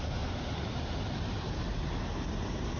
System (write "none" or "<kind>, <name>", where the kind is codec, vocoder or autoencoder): none